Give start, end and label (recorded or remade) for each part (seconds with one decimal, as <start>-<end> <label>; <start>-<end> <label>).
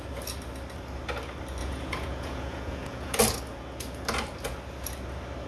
0.0-1.6 recorded; 1.6-3.2 remade; 3.2-5.5 recorded